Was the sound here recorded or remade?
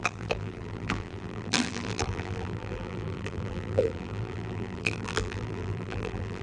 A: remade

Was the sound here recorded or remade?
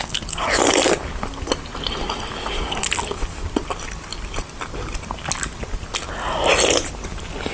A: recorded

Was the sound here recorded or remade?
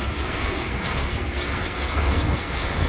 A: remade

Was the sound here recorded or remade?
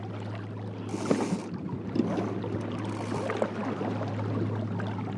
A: recorded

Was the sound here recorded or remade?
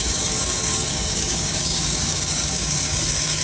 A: remade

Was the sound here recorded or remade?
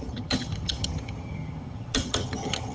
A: remade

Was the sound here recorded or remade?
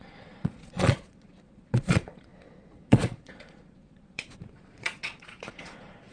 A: remade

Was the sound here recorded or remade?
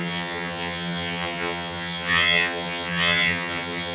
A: remade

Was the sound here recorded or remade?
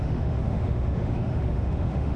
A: remade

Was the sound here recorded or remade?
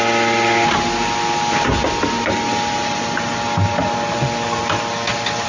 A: recorded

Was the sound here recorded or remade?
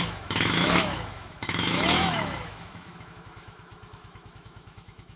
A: remade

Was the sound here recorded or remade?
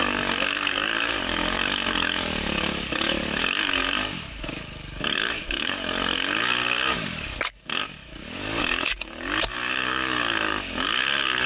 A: remade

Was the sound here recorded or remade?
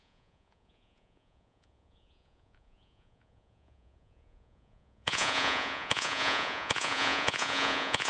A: remade